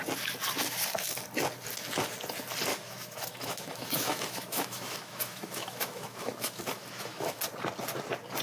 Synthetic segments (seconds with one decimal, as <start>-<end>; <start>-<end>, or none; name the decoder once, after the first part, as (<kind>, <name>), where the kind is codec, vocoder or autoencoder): 2.7-7.4 (autoencoder, DAC-VAE)